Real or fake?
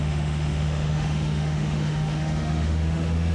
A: fake